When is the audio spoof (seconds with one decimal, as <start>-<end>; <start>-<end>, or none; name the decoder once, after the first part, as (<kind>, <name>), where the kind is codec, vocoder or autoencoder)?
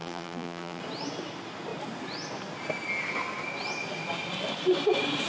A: 0.0-0.8 (vocoder, BigVGAN v2)